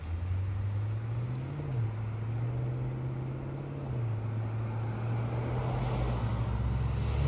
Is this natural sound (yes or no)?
yes